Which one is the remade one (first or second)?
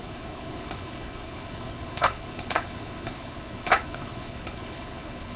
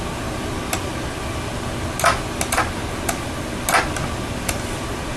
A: first